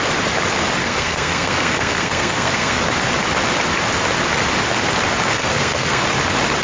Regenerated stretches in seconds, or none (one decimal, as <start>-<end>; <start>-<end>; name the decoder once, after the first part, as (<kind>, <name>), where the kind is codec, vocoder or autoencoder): 0.8-2.8 (codec, SNAC); 5.3-6.0